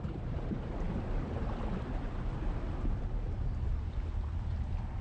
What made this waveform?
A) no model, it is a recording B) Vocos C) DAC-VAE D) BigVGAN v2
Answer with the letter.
A